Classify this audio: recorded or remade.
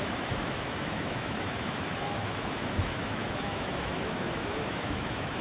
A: remade